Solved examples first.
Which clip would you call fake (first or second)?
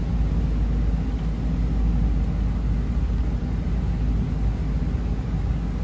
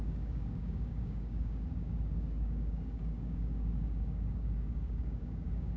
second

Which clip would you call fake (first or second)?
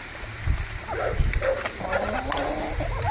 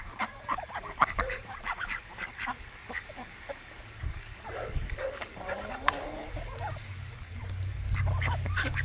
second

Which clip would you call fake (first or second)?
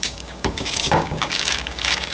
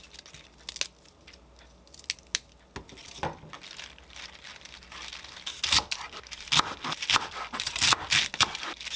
first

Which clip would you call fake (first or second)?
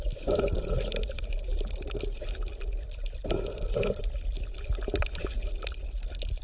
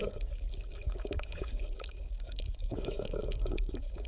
second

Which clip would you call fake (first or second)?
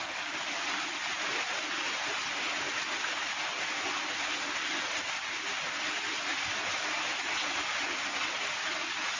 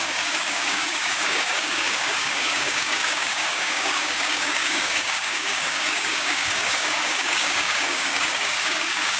second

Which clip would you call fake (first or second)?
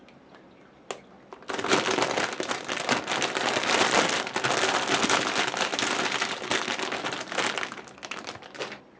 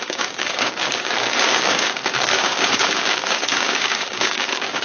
second